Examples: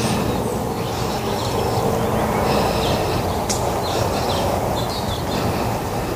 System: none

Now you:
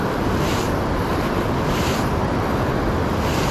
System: none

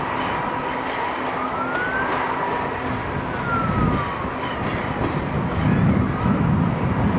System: none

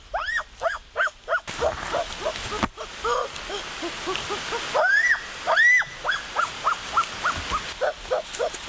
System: none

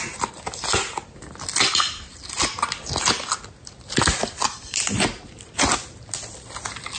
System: none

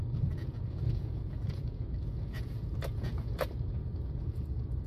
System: vocoder, Vocos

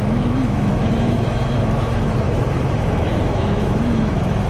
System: autoencoder, DAC-VAE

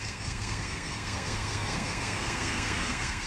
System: codec, SNAC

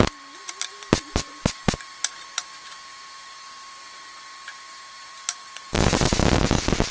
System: none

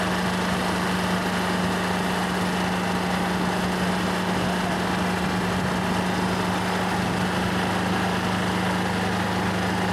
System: none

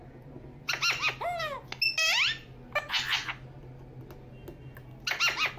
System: none